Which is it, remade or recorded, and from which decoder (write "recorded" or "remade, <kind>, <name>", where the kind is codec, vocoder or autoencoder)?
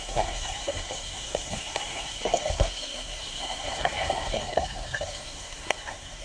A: remade, codec, SNAC